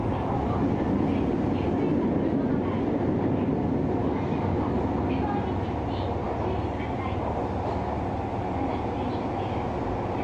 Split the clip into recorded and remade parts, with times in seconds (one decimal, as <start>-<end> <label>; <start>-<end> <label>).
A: 0.0-4.0 recorded; 4.0-4.8 remade; 4.8-10.2 recorded